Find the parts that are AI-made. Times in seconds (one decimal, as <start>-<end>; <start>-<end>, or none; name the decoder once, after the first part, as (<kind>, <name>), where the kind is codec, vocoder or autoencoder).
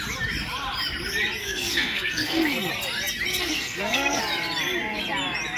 1.4-2.7 (codec, SNAC); 3.3-4.2